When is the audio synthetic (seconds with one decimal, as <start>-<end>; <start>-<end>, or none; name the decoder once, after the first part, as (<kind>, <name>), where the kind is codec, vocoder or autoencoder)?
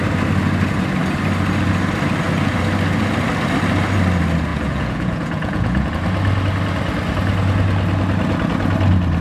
4.5-5.9 (vocoder, Vocos)